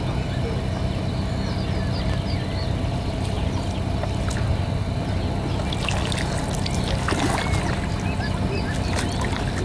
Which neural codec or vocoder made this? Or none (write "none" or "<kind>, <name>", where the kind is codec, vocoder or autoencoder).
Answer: none